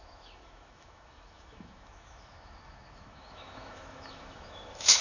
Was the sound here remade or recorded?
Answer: remade